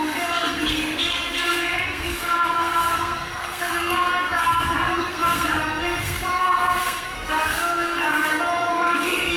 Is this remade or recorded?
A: remade